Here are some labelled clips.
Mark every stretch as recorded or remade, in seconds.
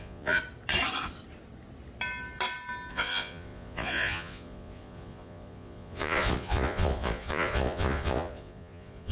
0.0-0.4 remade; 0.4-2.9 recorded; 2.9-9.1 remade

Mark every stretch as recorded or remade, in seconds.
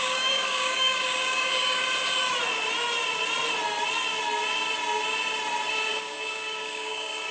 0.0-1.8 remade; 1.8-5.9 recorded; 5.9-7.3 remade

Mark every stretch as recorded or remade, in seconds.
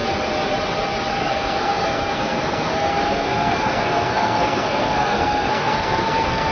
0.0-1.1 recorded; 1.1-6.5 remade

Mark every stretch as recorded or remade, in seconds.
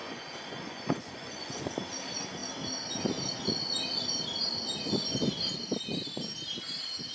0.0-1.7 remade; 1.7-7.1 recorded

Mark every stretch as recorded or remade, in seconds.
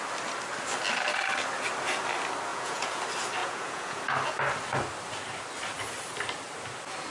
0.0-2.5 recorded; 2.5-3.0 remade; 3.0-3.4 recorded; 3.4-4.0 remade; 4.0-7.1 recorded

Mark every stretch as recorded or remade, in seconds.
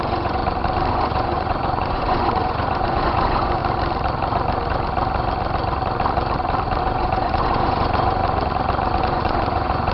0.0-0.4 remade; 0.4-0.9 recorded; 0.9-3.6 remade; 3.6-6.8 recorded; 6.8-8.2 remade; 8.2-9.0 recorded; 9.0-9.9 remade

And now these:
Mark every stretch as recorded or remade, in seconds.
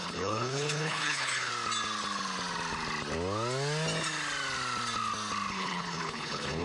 0.0-1.5 remade; 1.5-5.5 recorded; 5.5-6.6 remade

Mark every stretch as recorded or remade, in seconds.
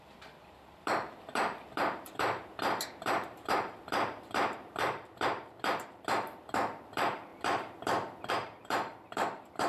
0.0-9.7 remade